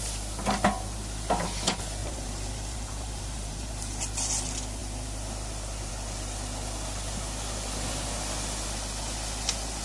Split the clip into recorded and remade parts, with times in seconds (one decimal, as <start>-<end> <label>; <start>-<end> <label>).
0.0-2.0 recorded; 2.0-3.7 remade; 3.7-9.8 recorded